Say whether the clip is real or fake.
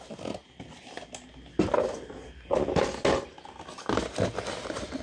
real